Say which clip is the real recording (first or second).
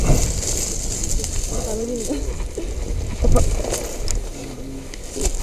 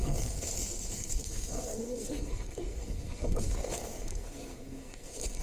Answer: first